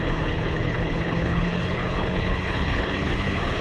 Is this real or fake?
fake